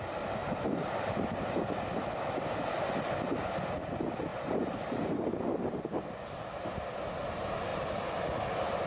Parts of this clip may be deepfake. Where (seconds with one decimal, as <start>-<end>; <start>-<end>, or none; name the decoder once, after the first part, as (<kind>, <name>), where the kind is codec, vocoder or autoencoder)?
0.4-1.6 (vocoder, BigVGAN v2); 4.3-5.8